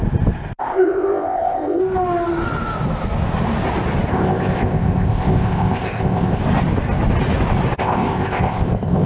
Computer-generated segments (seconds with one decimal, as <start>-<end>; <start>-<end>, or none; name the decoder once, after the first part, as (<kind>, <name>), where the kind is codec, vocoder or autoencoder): 0.6-1.8 (codec, ZipCodec); 4.1-6.4; 7.8-9.1